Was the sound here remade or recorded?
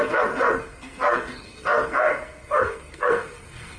remade